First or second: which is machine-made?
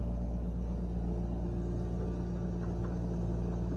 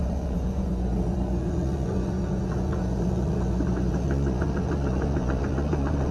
second